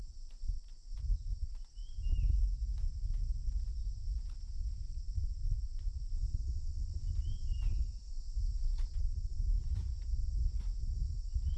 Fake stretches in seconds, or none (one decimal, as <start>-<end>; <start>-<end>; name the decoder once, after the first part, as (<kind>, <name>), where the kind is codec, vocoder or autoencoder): 5.4-6.0 (vocoder, Vocos); 8.9-9.9

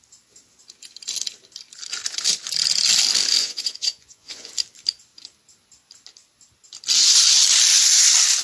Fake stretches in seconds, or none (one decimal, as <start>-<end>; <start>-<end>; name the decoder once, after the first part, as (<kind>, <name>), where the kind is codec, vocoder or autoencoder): 3.4-4.5 (vocoder, Vocos)

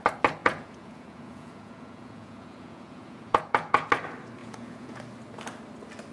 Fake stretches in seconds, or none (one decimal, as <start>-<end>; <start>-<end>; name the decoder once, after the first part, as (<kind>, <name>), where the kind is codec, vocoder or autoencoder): 0.4-3.9 (vocoder, Vocos); 4.4-5.0

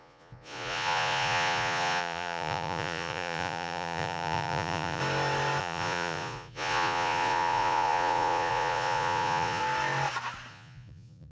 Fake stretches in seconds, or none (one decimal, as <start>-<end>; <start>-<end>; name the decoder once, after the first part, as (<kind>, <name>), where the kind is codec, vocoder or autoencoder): 0.0-5.0 (vocoder, Vocos); 5.6-9.6; 10.5-11.3

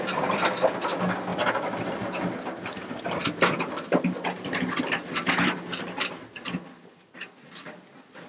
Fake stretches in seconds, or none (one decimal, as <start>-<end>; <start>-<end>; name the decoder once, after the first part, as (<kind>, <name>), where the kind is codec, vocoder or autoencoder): none

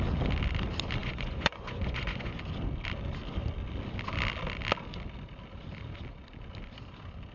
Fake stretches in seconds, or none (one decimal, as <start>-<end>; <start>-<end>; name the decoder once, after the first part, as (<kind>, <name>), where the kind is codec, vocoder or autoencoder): 1.0-2.4 (vocoder, Vocos)